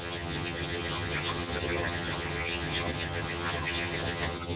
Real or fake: fake